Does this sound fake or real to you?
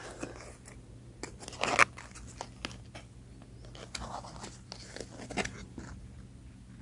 real